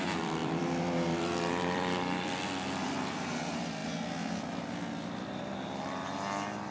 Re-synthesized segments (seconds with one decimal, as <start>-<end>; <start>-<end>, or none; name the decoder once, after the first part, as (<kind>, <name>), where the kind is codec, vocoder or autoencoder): 0.0-3.8 (vocoder, BigVGAN v2)